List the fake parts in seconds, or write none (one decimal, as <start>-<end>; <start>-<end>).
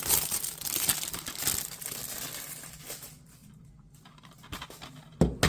none